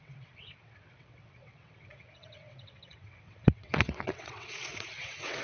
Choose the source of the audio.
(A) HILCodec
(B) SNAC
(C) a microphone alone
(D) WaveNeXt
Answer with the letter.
D